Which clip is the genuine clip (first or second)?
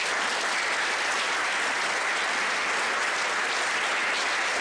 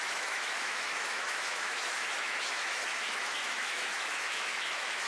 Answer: first